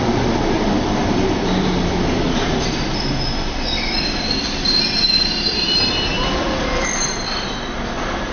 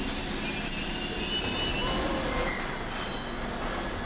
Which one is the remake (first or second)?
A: first